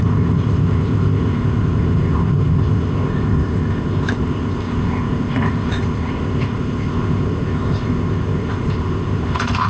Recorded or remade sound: remade